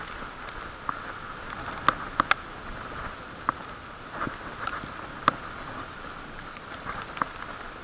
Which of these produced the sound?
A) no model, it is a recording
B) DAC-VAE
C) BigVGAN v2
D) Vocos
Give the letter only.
A